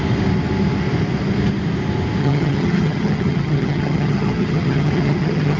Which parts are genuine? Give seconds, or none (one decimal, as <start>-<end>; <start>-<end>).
0.0-2.2